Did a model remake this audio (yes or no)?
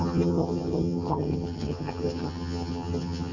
yes